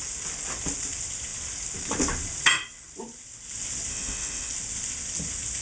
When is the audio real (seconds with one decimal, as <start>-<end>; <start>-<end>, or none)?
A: 0.0-3.9; 4.5-5.6

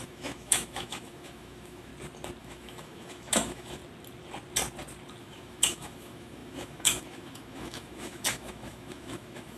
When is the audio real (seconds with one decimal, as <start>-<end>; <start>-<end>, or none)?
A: 1.9-2.4; 3.8-5.2

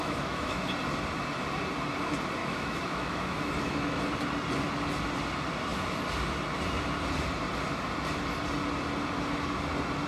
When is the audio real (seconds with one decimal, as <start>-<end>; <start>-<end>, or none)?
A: 0.6-2.4; 4.0-10.1